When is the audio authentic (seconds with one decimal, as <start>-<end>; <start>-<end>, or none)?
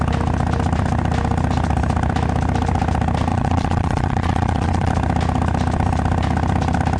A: 0.0-3.3; 4.9-7.0